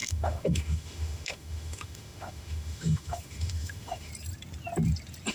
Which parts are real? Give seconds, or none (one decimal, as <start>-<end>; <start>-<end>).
4.1-5.3